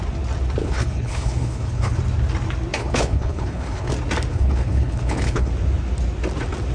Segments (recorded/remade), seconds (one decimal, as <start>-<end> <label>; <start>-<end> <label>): 0.0-0.6 recorded; 0.6-2.0 remade; 2.0-2.8 recorded; 2.8-3.9 remade; 3.9-4.3 recorded; 4.3-5.5 remade; 5.5-6.7 recorded